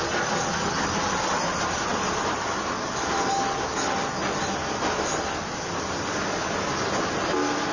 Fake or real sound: real